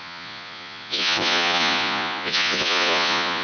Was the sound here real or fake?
fake